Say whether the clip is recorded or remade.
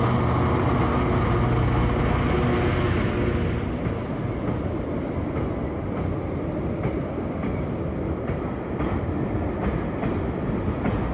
recorded